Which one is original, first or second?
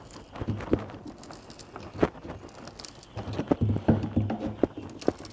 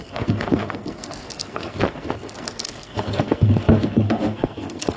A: first